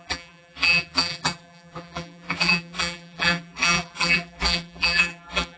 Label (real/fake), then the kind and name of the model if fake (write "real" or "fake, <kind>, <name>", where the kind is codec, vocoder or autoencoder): fake, vocoder, BigVGAN v2